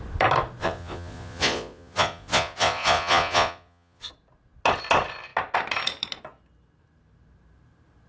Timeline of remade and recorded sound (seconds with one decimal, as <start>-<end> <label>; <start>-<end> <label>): 0.0-0.6 recorded; 0.6-4.1 remade; 4.1-8.1 recorded